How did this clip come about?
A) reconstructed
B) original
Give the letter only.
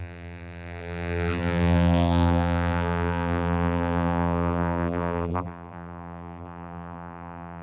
A